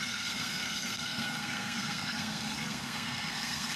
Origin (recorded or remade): remade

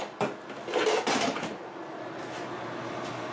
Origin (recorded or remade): recorded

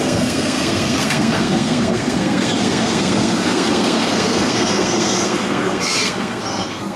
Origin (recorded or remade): remade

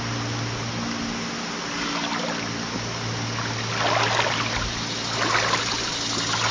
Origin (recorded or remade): recorded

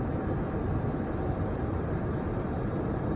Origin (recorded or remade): remade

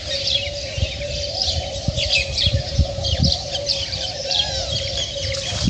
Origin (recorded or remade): remade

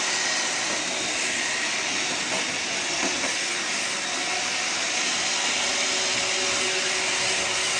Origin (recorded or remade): recorded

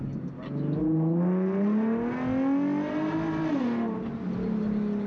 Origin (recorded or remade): recorded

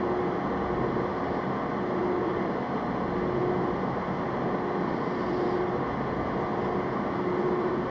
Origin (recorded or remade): recorded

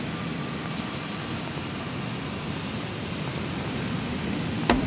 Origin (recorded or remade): recorded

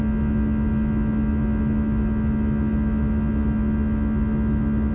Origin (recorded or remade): recorded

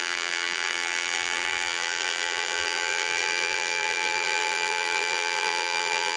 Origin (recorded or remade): remade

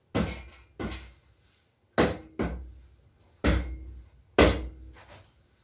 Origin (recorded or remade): recorded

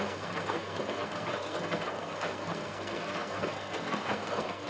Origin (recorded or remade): remade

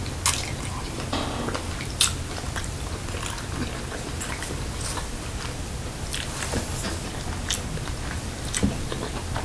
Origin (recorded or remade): recorded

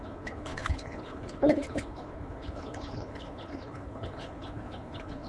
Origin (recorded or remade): remade